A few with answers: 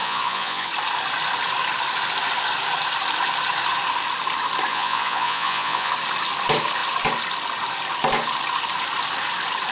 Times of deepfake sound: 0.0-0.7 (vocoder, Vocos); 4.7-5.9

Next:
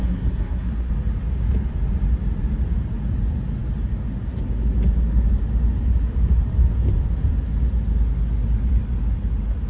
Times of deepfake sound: 0.0-0.9 (codec, SNAC)

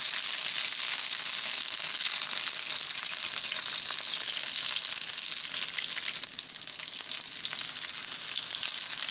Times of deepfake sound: 0.8-2.1 (codec, SNAC)

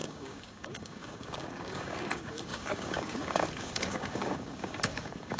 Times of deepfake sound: 0.0-5.4 (codec, DAC)

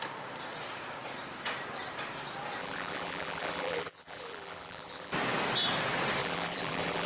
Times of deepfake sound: 2.6-5.1 (vocoder, BigVGAN v2); 6.2-7.1